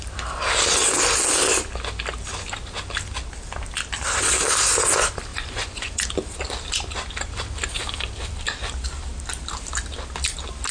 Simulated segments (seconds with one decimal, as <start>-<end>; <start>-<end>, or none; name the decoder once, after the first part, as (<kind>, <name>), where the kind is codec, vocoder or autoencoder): 5.3-6.1 (vocoder, Vocos)

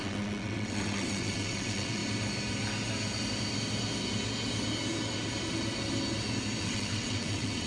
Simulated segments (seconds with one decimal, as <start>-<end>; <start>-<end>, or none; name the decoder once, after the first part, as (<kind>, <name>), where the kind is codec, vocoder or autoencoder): 0.0-2.0 (vocoder, WaveNeXt); 6.6-7.7